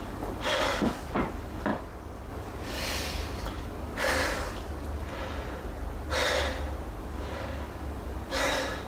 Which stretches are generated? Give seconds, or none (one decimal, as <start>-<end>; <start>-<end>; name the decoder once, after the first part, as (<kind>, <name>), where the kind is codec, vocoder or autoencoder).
0.0-4.2 (codec, DAC); 7.0-8.9